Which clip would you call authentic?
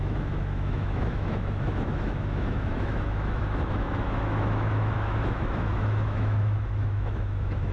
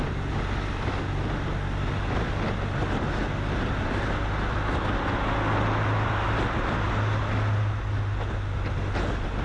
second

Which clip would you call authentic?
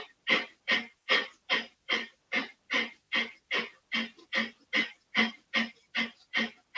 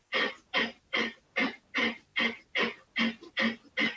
second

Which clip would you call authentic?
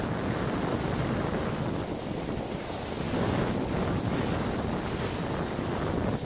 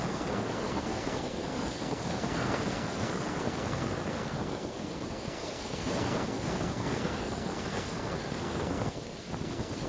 first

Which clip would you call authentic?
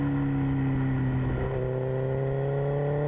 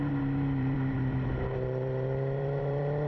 first